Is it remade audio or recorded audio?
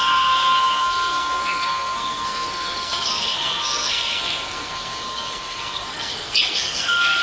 remade